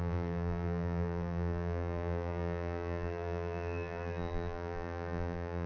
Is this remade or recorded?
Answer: remade